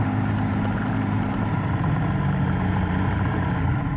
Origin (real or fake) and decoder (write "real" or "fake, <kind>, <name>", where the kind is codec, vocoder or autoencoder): fake, vocoder, BigVGAN v2